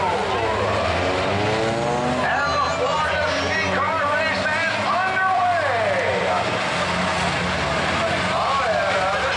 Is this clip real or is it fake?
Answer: real